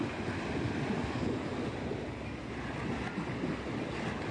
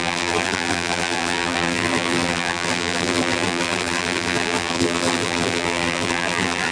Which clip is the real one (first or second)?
first